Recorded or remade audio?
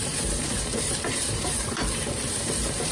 remade